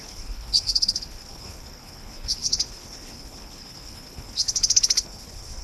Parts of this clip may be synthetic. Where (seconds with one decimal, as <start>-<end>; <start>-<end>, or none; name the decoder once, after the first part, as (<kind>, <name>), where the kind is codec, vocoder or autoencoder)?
0.0-5.6 (codec, HILCodec)